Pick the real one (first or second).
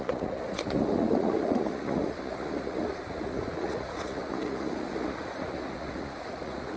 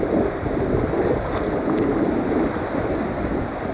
second